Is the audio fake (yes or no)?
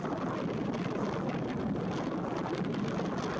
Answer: no